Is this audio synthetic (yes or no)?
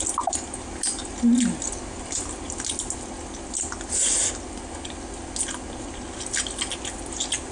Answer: no